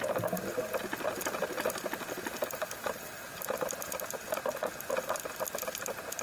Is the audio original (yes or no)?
yes